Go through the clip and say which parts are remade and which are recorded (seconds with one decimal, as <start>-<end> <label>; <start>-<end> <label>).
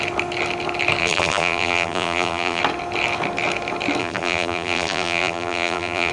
0.0-1.0 recorded; 1.0-2.6 remade; 2.6-4.0 recorded; 4.0-6.1 remade